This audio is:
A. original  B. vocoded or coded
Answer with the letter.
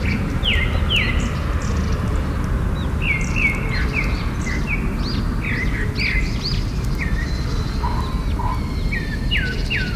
A